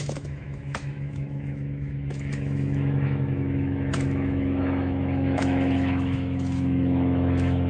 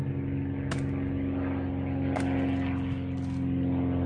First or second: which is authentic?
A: second